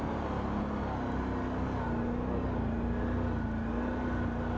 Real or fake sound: real